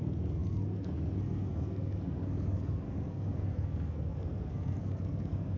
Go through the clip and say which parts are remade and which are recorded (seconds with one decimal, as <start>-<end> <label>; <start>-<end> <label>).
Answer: 0.0-5.6 remade